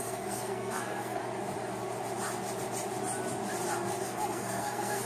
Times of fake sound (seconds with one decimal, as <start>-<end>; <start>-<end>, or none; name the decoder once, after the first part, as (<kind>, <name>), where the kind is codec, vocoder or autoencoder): 0.0-1.2 (codec, SNAC); 4.0-5.1